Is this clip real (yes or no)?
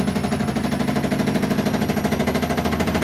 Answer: yes